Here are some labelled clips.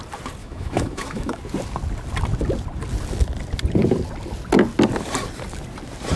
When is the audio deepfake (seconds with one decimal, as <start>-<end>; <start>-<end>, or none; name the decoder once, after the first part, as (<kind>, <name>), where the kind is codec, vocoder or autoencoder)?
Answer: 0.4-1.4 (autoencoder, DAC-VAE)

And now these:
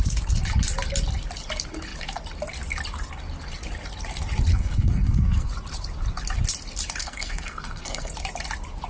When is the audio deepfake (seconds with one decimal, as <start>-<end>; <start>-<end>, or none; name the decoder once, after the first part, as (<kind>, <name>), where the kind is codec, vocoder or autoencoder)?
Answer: 4.5-5.5 (codec, SNAC); 7.0-8.1

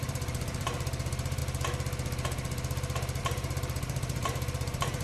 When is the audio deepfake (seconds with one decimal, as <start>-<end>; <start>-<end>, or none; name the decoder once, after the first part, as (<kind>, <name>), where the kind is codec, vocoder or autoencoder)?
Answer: 0.0-1.4 (vocoder, BigVGAN v2); 3.2-5.0

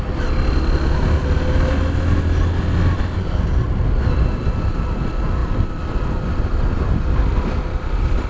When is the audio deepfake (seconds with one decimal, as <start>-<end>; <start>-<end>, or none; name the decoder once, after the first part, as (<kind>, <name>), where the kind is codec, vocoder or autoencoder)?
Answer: none

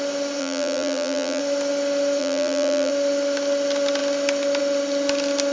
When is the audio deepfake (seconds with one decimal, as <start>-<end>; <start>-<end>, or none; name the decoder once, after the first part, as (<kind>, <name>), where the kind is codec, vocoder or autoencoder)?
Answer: 0.4-1.4 (vocoder, BigVGAN v2); 2.2-2.9